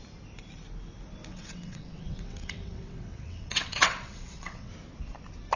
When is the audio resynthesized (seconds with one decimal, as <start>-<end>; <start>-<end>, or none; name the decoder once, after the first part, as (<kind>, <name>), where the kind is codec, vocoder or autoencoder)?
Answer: 1.3-4.7 (vocoder, WaveNeXt)